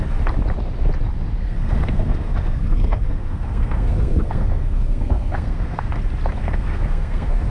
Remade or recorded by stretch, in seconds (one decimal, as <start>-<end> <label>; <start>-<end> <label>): 0.0-1.4 recorded; 1.4-5.9 remade; 5.9-6.4 recorded; 6.4-7.5 remade